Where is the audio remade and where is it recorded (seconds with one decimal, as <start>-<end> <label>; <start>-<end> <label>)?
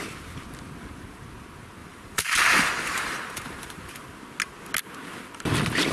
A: 0.0-1.8 recorded; 1.8-3.9 remade; 3.9-5.9 recorded